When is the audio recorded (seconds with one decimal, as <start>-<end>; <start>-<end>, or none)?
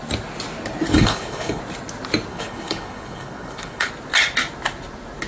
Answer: 0.0-0.9; 1.6-2.3; 3.9-5.3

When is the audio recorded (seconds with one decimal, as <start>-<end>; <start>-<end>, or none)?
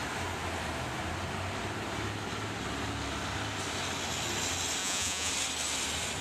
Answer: 0.0-4.8; 5.3-6.2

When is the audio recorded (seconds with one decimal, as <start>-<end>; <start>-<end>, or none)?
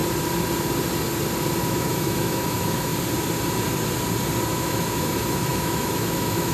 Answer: 0.0-1.6; 2.9-4.5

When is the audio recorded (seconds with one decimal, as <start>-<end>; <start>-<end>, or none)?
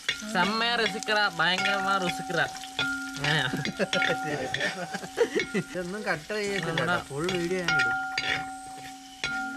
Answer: 0.0-4.3; 5.0-9.6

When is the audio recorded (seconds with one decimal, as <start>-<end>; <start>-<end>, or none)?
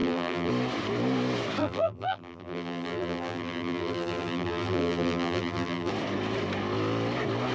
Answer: 0.5-1.6; 5.9-7.5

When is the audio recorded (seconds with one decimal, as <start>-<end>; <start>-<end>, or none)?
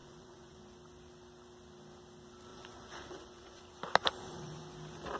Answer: 0.6-2.5; 3.6-4.0; 4.6-5.2